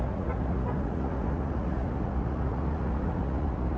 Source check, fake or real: fake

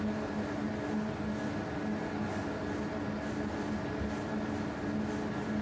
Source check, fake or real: real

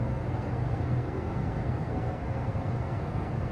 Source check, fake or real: fake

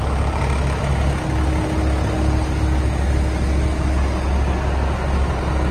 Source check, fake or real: real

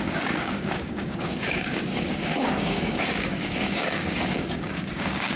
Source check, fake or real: fake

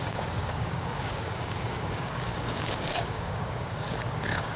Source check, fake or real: fake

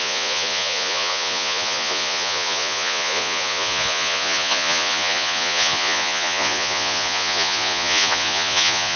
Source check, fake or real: fake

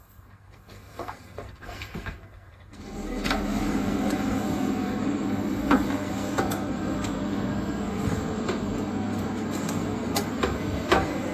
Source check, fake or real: fake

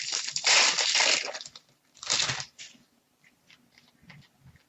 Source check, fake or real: fake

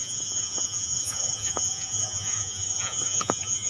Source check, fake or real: fake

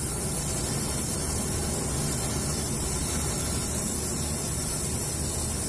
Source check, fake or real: real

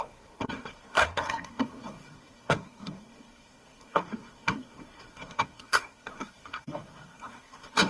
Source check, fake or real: fake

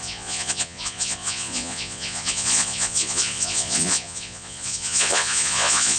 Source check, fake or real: fake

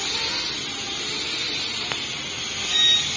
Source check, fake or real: real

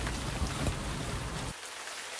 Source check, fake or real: real